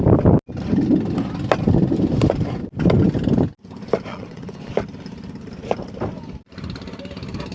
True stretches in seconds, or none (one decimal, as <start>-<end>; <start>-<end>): 0.0-4.1; 4.7-7.5